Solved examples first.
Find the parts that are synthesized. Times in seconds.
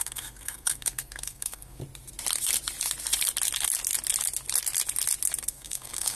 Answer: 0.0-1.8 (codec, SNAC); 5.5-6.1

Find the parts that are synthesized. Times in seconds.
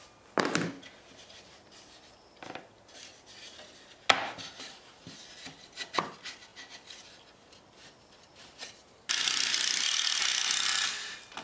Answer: none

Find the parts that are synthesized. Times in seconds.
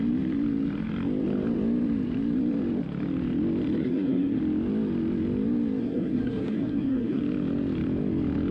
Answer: 3.8-4.4 (codec, SNAC); 5.8-7.2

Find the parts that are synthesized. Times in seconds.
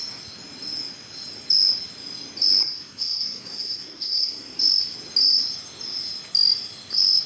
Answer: 2.6-4.6 (codec, SNAC)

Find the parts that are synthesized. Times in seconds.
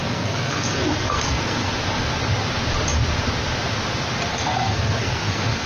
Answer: 0.0-1.7 (codec, SNAC); 4.3-5.7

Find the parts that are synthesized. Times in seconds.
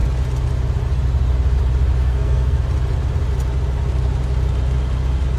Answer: 2.0-2.6 (codec, SNAC)